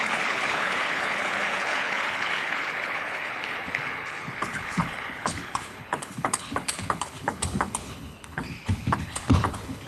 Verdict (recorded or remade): remade